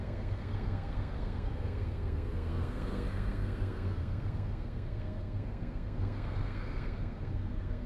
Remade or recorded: remade